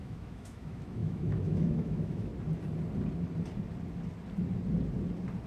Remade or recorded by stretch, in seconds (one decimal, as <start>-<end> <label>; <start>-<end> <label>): 0.0-2.3 remade; 2.3-5.5 recorded